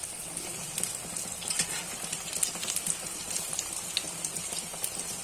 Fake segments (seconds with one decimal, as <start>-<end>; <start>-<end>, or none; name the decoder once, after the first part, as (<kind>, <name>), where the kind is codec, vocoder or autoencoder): 3.1-5.2 (vocoder, BigVGAN v2)